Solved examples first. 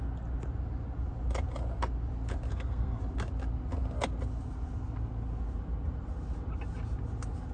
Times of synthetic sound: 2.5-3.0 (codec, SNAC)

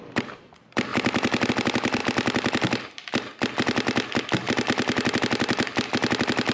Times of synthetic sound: 0.9-1.5 (vocoder, BigVGAN v2)

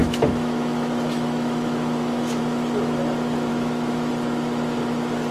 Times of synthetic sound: 0.0-2.4 (autoencoder, DAC-VAE); 3.5-4.1

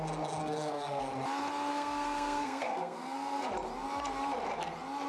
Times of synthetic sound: 0.4-1.0 (codec, SNAC); 1.7-3.5